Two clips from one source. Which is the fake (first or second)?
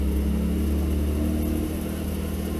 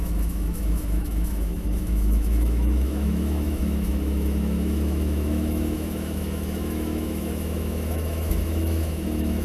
second